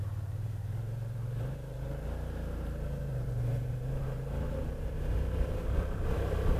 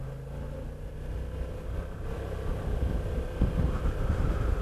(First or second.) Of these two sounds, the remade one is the first